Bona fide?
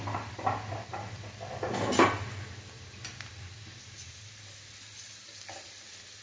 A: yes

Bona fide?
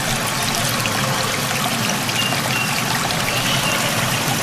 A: yes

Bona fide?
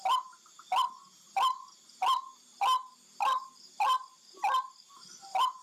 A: yes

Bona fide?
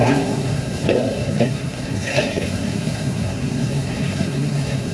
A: no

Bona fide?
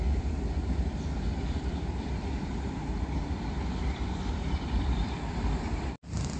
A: no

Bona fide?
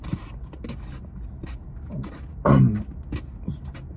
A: yes